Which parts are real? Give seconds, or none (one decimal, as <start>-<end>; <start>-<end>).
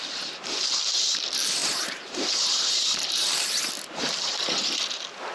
0.0-1.6; 3.7-5.3